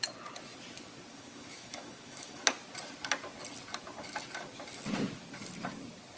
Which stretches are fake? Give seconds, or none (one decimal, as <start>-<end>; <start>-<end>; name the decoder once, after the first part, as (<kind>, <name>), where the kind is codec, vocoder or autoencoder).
1.1-2.4 (autoencoder, DAC-VAE)